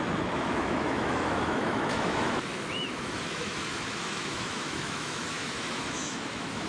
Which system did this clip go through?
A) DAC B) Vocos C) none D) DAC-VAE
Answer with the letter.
D